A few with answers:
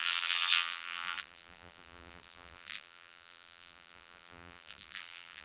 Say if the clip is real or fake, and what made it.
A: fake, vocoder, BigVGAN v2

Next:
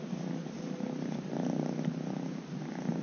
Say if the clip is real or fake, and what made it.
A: real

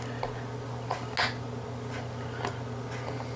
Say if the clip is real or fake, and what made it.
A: real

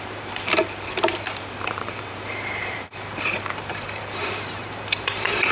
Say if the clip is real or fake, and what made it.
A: fake, vocoder, BigVGAN v2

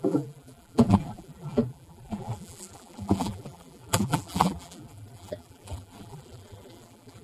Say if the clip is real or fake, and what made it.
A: fake, vocoder, BigVGAN v2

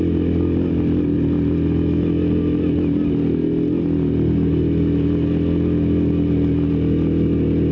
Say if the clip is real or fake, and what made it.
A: real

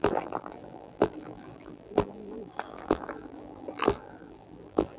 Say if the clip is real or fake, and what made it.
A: fake, vocoder, BigVGAN v2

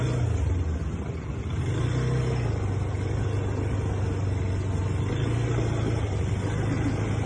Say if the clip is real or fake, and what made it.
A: real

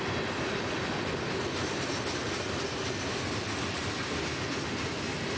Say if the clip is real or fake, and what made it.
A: real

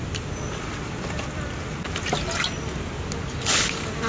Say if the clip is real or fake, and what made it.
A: real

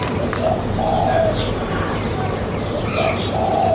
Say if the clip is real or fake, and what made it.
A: fake, vocoder, BigVGAN v2